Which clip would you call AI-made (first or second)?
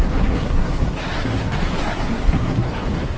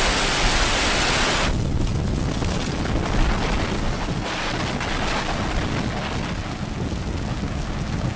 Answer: first